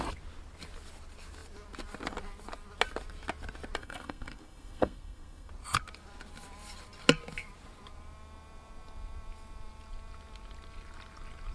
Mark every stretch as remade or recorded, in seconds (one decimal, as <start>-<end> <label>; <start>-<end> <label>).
0.0-3.8 recorded; 3.8-5.5 remade; 5.5-11.5 recorded